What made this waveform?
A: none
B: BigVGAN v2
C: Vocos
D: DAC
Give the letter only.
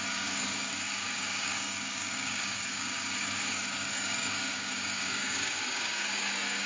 D